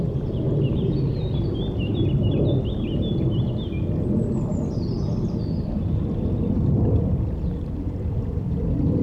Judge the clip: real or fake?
real